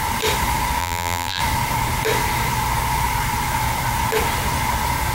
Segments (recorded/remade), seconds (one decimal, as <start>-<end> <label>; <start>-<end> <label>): 0.0-0.8 recorded; 0.8-1.4 remade; 1.4-5.1 recorded